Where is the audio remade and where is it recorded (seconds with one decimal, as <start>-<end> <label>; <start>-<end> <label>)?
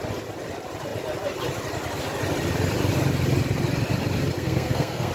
0.0-4.4 recorded; 4.4-5.1 remade